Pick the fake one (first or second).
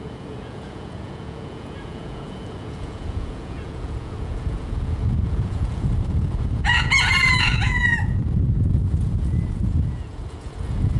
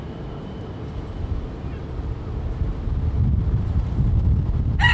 first